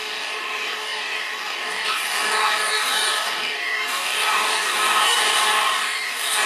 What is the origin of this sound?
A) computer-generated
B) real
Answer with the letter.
A